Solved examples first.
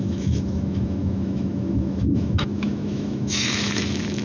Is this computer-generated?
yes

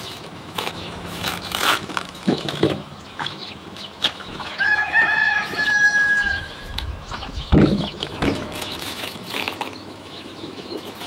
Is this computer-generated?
yes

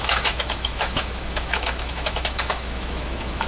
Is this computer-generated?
yes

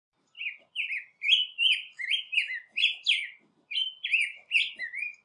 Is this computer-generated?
no